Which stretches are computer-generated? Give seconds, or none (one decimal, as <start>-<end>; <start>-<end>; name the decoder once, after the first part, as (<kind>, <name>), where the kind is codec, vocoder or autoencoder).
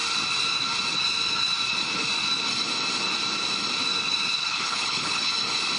4.4-5.3 (codec, HILCodec)